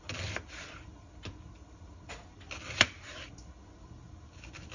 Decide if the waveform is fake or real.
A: real